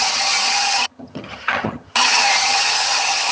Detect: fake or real fake